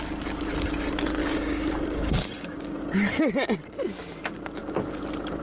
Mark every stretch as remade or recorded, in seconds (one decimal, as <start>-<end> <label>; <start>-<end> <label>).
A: 0.0-1.2 recorded; 1.2-2.8 remade; 2.8-5.4 recorded